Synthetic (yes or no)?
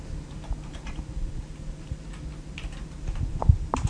no